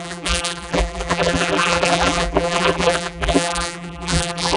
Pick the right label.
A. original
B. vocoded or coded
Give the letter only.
B